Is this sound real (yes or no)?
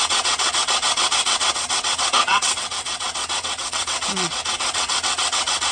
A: no